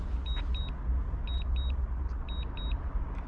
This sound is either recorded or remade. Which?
recorded